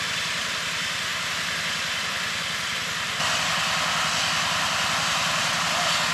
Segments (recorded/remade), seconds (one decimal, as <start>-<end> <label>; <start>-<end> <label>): 0.0-6.1 recorded